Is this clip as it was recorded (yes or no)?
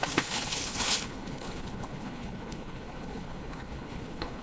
no